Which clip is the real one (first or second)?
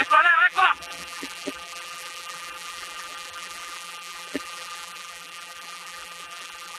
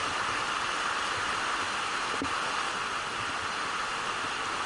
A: second